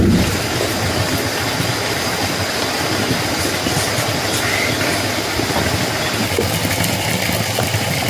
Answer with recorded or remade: recorded